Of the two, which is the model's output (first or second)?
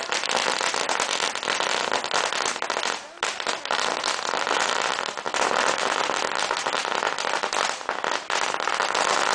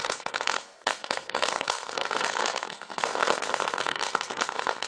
second